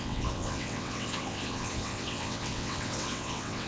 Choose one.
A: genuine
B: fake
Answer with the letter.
B